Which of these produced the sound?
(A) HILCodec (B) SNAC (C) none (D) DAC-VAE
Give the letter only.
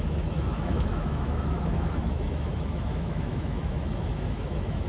D